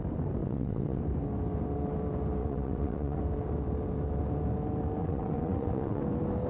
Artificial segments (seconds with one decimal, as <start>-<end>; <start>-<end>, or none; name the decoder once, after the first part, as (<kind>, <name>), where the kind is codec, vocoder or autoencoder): 0.4-1.0 (vocoder, WaveNeXt); 2.4-3.2; 5.0-6.0